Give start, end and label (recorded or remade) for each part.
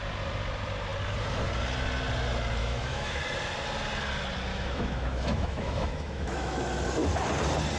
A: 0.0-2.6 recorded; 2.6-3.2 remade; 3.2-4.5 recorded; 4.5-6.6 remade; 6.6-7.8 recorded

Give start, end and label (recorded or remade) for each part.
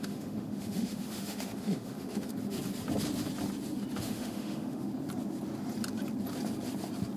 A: 0.0-2.3 remade; 2.3-4.0 recorded; 4.0-4.9 remade; 4.9-7.2 recorded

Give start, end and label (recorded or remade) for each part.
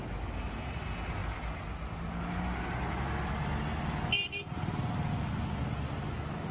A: 0.0-6.5 recorded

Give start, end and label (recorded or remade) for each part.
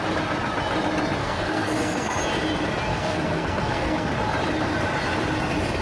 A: 0.0-1.2 recorded; 1.2-2.2 remade; 2.2-2.9 recorded; 2.9-4.1 remade; 4.1-5.8 recorded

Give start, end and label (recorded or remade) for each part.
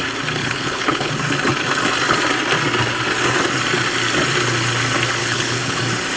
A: 0.0-0.4 recorded; 0.4-1.1 remade; 1.1-5.2 recorded; 5.2-5.8 remade; 5.8-6.2 recorded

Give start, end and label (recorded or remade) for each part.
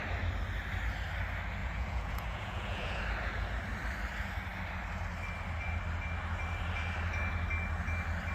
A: 0.0-1.6 recorded; 1.6-3.0 remade; 3.0-8.3 recorded